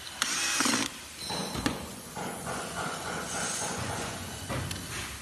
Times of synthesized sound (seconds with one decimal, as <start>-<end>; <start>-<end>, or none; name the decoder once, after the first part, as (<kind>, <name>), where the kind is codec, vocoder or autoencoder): 1.4-4.5 (vocoder, Vocos)